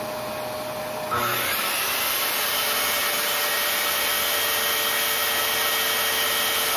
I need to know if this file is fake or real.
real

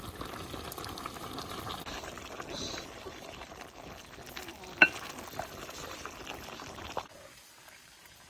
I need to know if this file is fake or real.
real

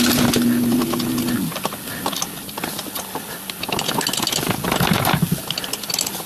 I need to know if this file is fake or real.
real